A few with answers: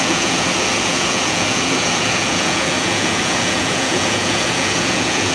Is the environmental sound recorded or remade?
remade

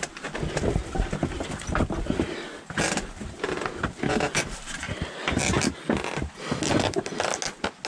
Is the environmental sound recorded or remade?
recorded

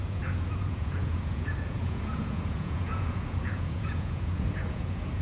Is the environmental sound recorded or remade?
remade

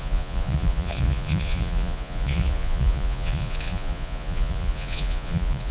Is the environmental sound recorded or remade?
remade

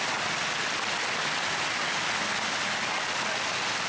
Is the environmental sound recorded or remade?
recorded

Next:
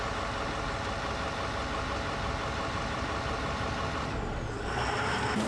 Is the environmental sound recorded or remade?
recorded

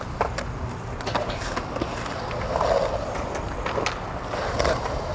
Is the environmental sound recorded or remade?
recorded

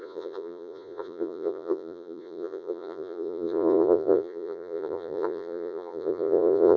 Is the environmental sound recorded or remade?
remade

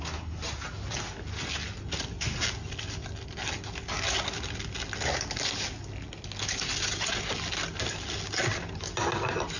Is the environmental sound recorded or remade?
recorded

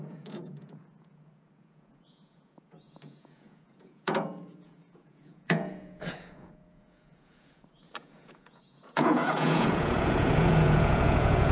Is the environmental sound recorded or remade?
remade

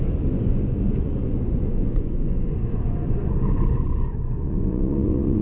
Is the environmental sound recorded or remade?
remade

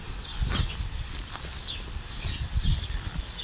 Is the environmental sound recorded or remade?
recorded